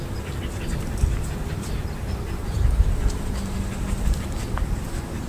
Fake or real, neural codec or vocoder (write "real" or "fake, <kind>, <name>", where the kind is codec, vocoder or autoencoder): real